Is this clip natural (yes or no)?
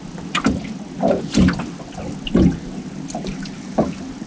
yes